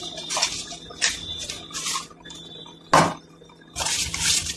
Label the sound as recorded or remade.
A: recorded